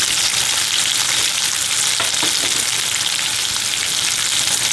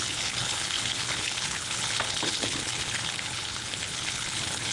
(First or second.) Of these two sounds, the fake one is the second